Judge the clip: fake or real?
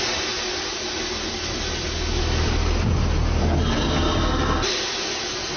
real